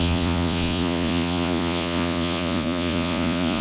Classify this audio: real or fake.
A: fake